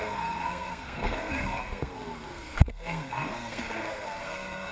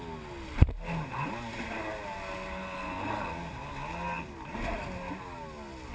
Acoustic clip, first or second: second